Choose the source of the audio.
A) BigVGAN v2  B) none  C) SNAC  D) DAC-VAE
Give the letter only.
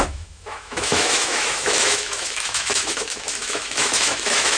D